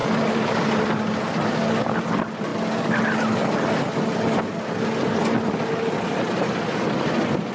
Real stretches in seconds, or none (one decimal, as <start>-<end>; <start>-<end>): 0.0-7.5